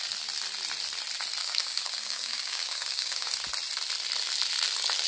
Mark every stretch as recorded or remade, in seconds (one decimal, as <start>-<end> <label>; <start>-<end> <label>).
0.0-1.4 recorded; 1.4-3.3 remade; 3.3-5.1 recorded